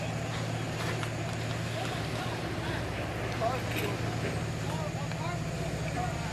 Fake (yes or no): no